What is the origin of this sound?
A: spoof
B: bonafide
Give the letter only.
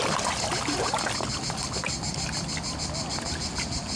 B